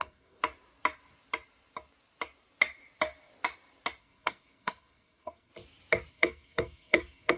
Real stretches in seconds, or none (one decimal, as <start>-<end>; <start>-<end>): 0.4-4.0; 5.5-6.1